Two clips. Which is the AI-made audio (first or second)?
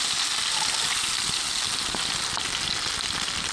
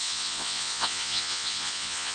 second